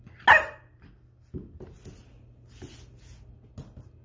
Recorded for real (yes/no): yes